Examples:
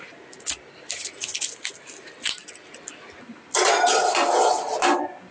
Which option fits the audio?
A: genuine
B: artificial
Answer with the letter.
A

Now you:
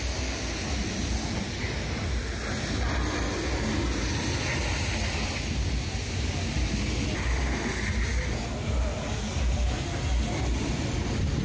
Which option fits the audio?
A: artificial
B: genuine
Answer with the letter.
B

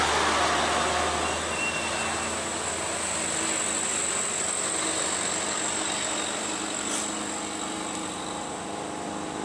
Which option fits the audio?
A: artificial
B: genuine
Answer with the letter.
B